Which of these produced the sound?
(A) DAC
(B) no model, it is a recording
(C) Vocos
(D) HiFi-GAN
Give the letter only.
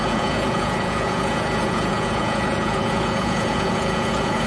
C